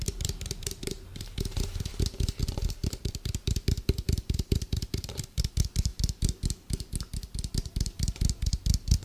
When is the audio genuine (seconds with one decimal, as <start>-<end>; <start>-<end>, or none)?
1.9-2.4; 5.9-7.5